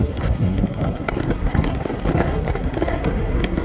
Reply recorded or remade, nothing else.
remade